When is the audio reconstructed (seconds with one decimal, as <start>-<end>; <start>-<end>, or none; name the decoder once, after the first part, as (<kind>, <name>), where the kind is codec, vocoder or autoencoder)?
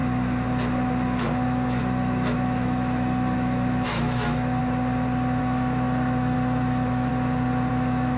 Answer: 1.8-4.6 (autoencoder, DAC-VAE); 5.4-7.1; 7.7-8.2